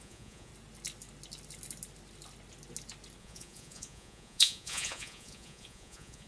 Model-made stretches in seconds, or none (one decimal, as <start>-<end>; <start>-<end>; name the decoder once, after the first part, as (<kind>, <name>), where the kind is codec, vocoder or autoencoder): 0.0-0.5 (vocoder, Vocos); 3.2-6.3